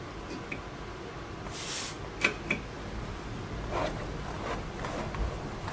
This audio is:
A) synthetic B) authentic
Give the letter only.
B